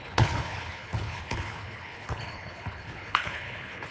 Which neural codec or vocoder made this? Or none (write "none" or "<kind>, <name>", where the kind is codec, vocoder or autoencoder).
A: codec, HILCodec